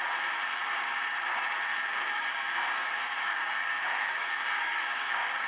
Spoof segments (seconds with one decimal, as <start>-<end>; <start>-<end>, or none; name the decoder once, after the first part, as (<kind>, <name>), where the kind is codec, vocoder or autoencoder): 1.9-5.5 (codec, DAC)